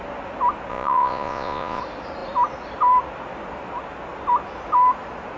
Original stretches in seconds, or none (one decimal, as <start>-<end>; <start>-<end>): 0.0-0.7; 1.8-5.4